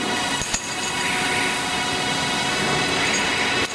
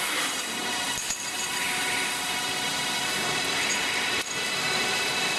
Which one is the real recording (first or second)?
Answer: first